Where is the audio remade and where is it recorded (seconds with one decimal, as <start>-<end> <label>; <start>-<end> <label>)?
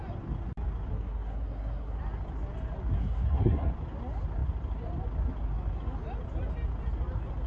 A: 0.0-0.9 recorded; 0.9-2.0 remade; 2.0-3.0 recorded; 3.0-3.7 remade; 3.7-7.5 recorded